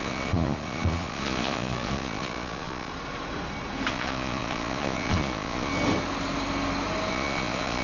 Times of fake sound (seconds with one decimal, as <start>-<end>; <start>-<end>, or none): 0.0-2.9; 3.9-5.7; 7.1-7.8